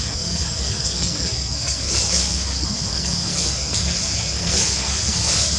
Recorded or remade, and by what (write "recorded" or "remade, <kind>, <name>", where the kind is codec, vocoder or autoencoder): remade, codec, SNAC